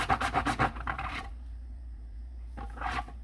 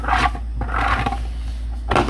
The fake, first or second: first